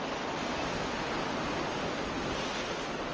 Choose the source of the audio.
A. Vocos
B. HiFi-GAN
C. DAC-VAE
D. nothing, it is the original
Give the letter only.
D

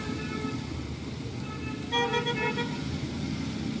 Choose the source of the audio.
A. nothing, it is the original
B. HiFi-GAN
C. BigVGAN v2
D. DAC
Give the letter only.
A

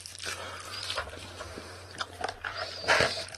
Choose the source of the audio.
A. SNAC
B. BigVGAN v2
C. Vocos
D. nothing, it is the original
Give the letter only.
B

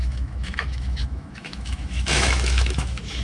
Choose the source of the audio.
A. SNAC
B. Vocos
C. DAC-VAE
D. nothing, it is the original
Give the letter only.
C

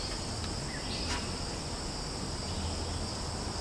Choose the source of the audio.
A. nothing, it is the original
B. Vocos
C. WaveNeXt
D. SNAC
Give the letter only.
A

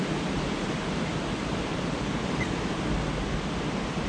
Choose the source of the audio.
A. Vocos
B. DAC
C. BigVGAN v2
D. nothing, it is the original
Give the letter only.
D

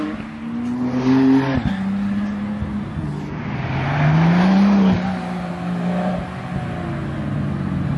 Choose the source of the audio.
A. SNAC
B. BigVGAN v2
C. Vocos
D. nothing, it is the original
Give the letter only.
D